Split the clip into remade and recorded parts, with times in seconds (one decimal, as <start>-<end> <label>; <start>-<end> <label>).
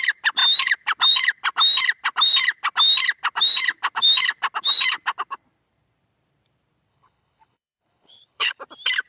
0.0-6.9 recorded; 6.9-8.6 remade; 8.6-9.1 recorded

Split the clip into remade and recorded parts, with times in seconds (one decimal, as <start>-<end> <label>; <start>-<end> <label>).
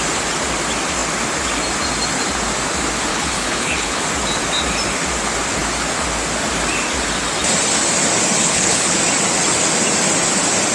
0.0-3.1 recorded; 3.1-4.0 remade; 4.0-8.4 recorded; 8.4-9.0 remade; 9.0-10.7 recorded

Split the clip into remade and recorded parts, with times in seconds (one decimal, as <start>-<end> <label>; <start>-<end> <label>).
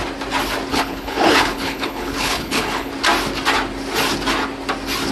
0.0-0.7 recorded; 0.7-2.9 remade; 2.9-5.1 recorded